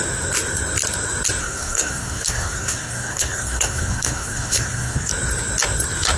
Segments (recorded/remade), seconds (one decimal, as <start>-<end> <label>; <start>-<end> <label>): 0.0-1.4 recorded; 1.4-5.1 remade; 5.1-6.2 recorded